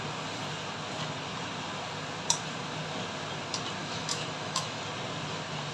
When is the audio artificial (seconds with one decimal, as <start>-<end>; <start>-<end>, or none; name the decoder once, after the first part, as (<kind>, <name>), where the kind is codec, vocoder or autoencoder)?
3.8-4.8 (autoencoder, DAC-VAE)